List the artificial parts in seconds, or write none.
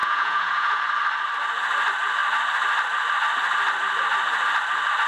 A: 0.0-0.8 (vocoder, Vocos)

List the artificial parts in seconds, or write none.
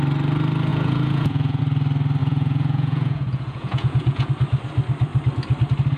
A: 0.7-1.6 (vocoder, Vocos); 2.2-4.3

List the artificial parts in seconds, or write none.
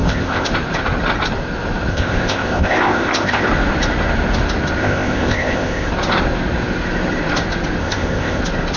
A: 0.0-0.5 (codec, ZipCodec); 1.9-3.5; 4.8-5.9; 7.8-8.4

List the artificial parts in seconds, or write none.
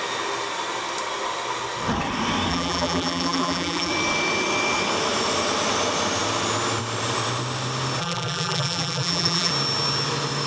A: 2.5-3.9 (vocoder, BigVGAN v2); 8.0-9.5